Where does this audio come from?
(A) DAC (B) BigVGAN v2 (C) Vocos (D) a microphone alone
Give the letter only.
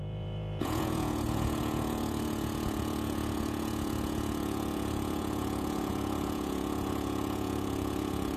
C